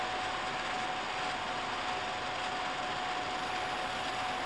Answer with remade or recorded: recorded